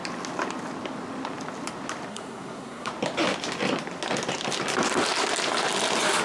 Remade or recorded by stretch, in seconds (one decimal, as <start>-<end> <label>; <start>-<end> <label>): 0.0-2.1 recorded; 2.1-2.9 remade; 2.9-6.2 recorded